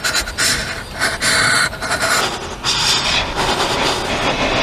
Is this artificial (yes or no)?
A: no